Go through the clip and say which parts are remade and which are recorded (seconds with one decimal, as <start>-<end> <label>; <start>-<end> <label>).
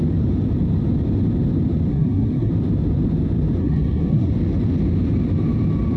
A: 0.0-1.9 recorded; 1.9-2.5 remade; 2.5-3.6 recorded; 3.6-4.3 remade; 4.3-6.0 recorded